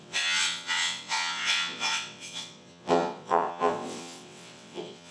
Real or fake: fake